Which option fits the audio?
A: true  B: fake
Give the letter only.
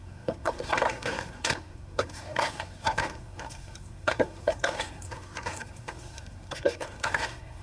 B